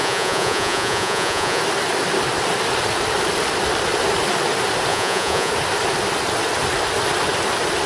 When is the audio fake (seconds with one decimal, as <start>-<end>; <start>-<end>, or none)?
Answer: 0.0-1.6; 4.9-5.5